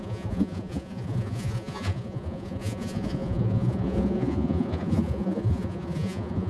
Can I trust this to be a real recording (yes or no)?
no